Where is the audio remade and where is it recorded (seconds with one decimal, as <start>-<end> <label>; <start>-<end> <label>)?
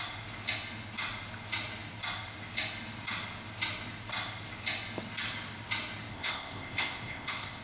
0.0-6.1 recorded; 6.1-7.6 remade